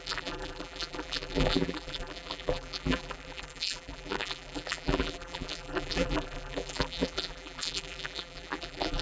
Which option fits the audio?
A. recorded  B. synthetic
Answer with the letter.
B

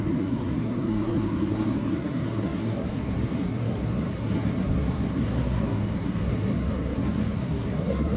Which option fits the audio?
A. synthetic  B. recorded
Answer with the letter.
A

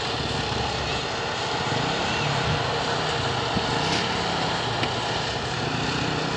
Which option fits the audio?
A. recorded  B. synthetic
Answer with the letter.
A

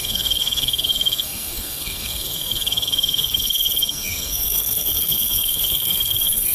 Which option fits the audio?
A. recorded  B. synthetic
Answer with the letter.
B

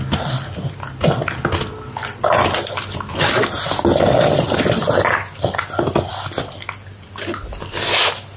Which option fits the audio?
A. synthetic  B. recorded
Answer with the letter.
B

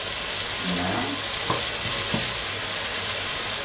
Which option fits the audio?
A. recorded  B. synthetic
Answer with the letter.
A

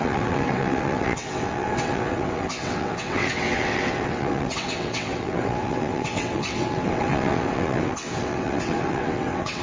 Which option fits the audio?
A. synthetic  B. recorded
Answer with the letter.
A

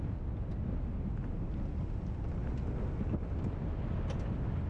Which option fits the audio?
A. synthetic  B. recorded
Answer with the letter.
B